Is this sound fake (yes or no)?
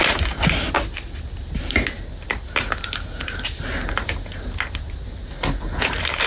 no